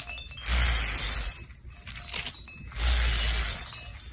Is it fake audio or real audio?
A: real